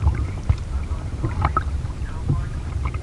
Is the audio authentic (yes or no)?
no